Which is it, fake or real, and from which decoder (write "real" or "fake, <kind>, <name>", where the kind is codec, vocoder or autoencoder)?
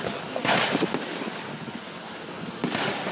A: real